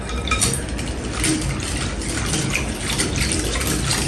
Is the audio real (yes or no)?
yes